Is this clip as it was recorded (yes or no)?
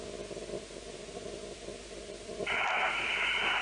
yes